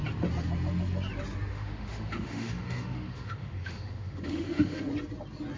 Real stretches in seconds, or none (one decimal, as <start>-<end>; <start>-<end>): 0.0-1.5; 4.9-5.6